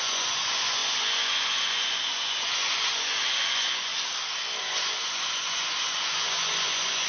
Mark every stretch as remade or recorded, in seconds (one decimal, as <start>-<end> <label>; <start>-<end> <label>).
0.0-3.9 remade; 3.9-4.6 recorded; 4.6-7.1 remade